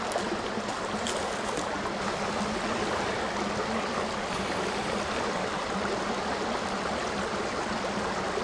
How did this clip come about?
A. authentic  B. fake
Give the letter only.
A